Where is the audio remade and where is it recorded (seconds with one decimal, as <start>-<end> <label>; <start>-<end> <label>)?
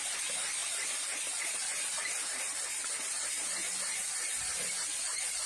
0.0-5.5 recorded